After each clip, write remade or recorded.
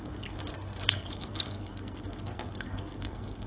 remade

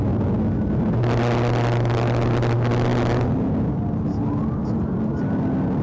recorded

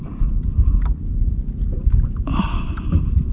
recorded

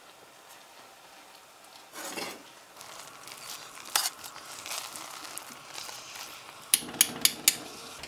recorded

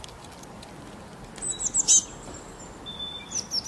recorded